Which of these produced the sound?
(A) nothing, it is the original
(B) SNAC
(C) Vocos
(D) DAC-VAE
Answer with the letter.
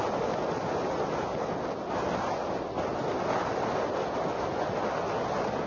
A